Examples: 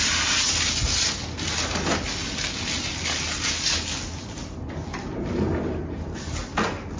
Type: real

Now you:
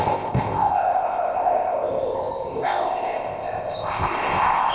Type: fake